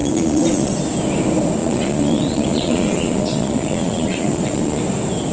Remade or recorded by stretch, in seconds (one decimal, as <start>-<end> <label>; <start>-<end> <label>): 0.0-0.7 remade; 0.7-1.6 recorded; 1.6-4.8 remade; 4.8-5.3 recorded